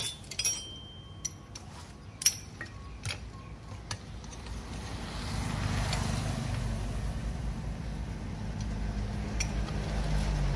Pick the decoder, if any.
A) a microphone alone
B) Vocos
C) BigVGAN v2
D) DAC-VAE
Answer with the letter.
A